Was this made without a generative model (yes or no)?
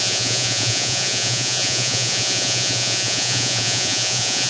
no